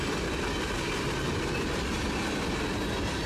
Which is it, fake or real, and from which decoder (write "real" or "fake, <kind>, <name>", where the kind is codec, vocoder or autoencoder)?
real